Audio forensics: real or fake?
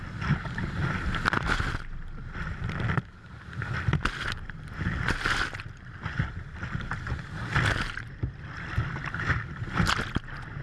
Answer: real